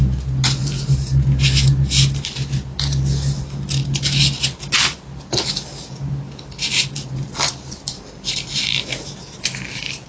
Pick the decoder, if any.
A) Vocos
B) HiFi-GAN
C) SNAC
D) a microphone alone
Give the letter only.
D